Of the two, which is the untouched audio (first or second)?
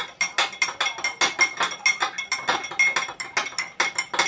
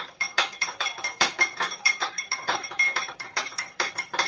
first